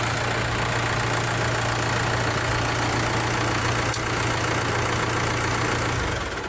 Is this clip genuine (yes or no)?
yes